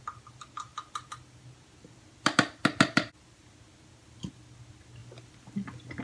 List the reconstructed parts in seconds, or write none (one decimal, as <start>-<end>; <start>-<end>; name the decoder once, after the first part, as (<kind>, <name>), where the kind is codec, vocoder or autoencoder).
none

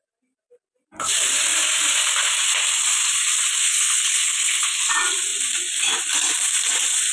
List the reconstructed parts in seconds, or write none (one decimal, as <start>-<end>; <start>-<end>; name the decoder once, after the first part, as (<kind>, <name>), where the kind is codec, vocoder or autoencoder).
3.6-4.8 (codec, HILCodec)

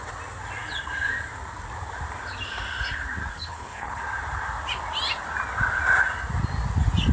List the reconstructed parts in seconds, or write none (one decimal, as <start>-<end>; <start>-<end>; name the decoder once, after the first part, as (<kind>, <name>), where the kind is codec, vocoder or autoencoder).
3.3-4.0 (codec, HILCodec)

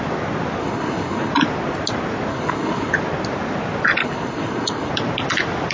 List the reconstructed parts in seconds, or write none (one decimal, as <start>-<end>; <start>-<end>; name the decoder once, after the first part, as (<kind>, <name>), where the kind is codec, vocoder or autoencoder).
0.6-1.3 (codec, HILCodec); 2.3-2.9; 4.0-4.9

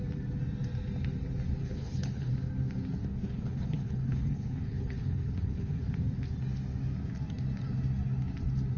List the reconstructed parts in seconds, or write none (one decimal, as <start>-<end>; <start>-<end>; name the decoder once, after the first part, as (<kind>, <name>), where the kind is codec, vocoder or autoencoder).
1.6-2.3 (codec, HILCodec); 3.0-5.8